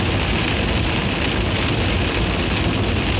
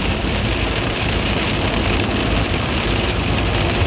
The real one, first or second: first